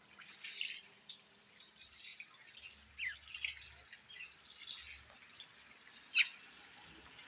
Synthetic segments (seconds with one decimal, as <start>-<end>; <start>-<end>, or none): 0.0-2.1; 6.5-7.3